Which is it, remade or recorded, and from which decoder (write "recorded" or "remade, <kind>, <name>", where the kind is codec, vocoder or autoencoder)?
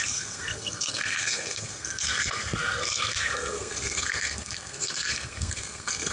remade, codec, SNAC